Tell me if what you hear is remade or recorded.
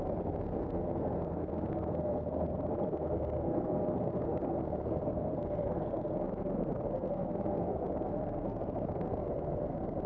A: remade